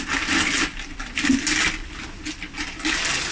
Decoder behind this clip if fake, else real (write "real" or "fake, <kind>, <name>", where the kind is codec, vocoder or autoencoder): real